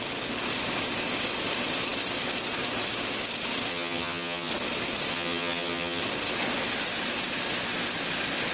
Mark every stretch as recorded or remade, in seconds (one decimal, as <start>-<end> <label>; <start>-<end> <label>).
0.0-3.7 recorded; 3.7-4.5 remade; 4.5-5.1 recorded; 5.1-6.0 remade; 6.0-8.5 recorded